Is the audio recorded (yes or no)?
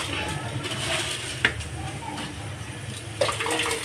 yes